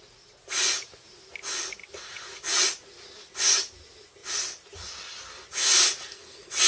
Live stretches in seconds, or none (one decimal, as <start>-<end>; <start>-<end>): 0.0-6.0